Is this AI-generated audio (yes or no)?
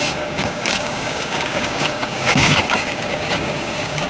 yes